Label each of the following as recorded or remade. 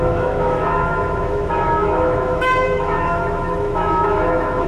remade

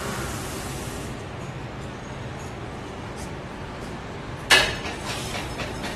recorded